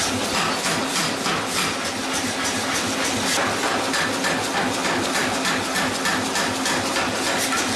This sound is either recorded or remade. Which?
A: recorded